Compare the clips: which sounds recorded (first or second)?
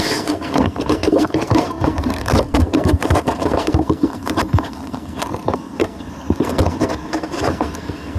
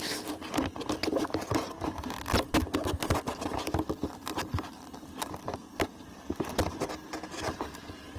second